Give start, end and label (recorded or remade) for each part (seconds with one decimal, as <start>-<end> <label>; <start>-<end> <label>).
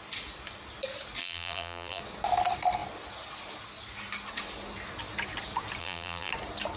0.0-1.2 recorded; 1.2-2.0 remade; 2.0-5.8 recorded; 5.8-6.3 remade; 6.3-6.8 recorded